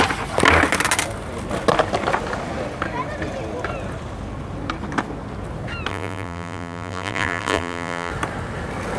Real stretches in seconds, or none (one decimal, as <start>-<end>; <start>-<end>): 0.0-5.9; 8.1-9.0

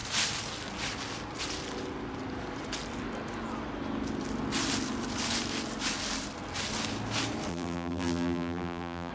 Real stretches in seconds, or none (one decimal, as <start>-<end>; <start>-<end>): 0.0-7.5

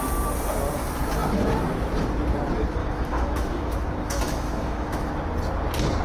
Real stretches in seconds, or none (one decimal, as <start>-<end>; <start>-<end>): 0.0-2.8; 5.1-6.0

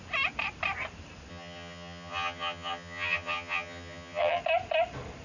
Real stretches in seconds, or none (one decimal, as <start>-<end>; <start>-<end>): 0.0-1.3; 4.4-5.2

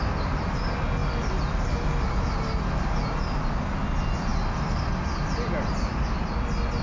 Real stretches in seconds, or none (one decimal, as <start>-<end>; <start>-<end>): 0.0-6.8